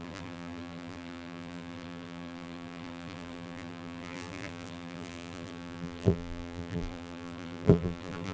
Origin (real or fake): fake